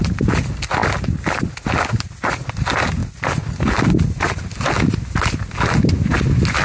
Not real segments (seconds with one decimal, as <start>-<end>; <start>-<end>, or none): none